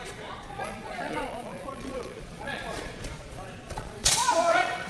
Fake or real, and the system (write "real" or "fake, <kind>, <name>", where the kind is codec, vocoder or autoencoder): fake, vocoder, Vocos